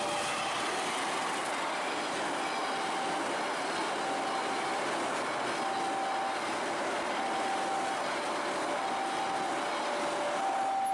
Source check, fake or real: real